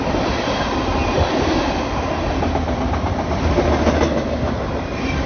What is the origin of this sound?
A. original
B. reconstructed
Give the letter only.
A